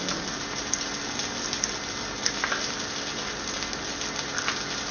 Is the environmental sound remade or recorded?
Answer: recorded